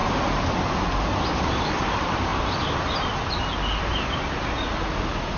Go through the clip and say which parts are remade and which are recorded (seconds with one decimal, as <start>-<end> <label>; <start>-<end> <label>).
0.0-1.4 recorded; 1.4-2.3 remade; 2.3-5.0 recorded; 5.0-5.4 remade